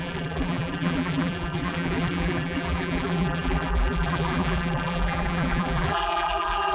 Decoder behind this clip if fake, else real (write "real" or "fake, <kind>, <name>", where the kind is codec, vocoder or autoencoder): fake, vocoder, BigVGAN v2